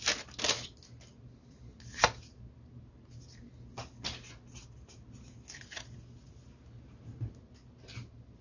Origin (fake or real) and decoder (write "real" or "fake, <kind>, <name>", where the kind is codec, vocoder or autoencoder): real